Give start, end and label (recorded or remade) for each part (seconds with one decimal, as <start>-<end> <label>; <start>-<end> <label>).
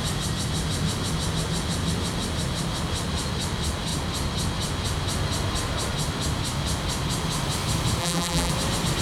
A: 0.0-8.0 recorded; 8.0-8.5 remade; 8.5-9.0 recorded